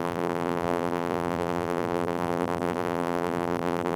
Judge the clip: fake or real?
fake